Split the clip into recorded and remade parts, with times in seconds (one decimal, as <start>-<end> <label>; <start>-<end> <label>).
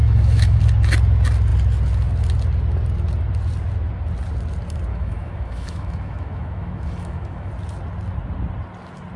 0.0-0.6 remade; 0.6-4.9 recorded; 4.9-7.5 remade; 7.5-9.2 recorded